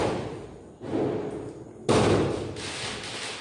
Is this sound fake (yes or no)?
no